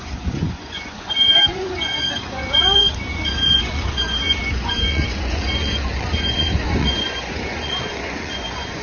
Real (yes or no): no